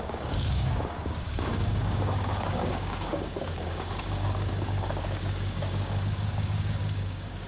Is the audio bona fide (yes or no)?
no